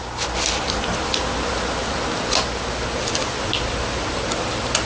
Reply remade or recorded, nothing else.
recorded